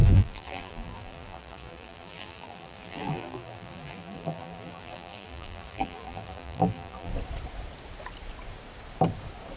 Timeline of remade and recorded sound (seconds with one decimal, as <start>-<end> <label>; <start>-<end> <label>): 0.0-7.1 remade; 7.1-9.6 recorded